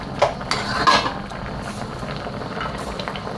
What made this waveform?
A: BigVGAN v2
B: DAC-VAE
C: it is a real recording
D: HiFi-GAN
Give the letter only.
C